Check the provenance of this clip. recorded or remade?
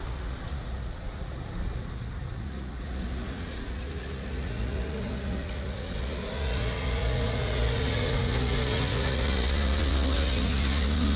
remade